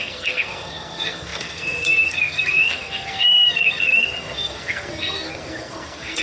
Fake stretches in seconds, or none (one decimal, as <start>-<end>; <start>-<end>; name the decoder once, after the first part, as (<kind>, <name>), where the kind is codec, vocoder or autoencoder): 0.0-6.2 (codec, SNAC)